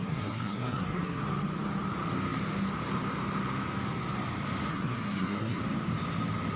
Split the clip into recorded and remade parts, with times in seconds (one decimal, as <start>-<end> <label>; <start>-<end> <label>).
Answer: 0.0-1.2 remade; 1.2-4.7 recorded; 4.7-5.6 remade; 5.6-6.6 recorded